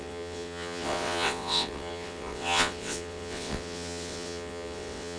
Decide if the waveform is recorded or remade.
remade